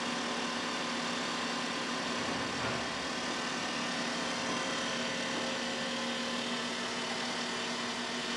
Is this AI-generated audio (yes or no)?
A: no